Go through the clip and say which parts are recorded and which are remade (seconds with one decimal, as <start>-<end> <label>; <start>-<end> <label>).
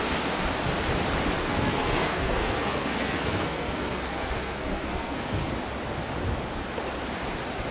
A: 0.0-1.4 recorded; 1.4-5.5 remade; 5.5-7.7 recorded